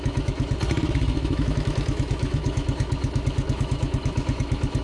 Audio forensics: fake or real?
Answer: fake